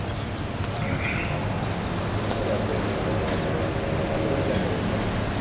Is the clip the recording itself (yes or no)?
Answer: yes